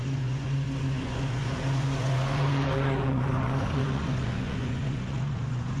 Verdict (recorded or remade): remade